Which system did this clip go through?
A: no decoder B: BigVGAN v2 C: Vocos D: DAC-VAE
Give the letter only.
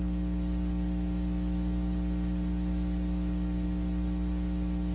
A